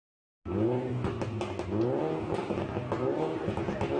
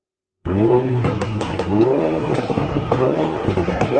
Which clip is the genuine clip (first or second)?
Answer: first